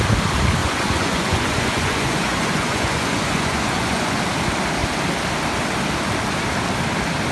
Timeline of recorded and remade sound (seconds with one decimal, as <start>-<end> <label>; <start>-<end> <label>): 0.0-0.6 recorded; 0.6-4.2 remade; 4.2-7.3 recorded